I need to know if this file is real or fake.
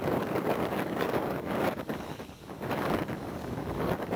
fake